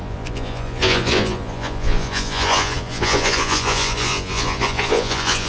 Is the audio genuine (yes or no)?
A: no